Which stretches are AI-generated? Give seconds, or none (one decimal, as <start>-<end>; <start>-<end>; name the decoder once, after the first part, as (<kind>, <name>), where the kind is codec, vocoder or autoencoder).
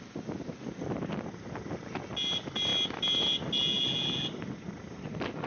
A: none